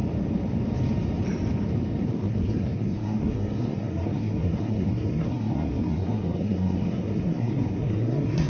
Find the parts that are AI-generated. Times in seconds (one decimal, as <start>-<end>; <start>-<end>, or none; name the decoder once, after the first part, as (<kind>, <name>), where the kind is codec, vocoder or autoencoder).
2.1-8.5 (codec, SNAC)